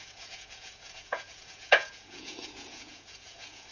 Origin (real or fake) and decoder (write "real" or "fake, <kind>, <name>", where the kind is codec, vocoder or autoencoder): fake, vocoder, Vocos